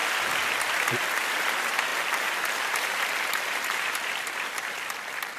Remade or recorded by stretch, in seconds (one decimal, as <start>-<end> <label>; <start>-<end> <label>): 0.0-0.7 recorded; 0.7-5.4 remade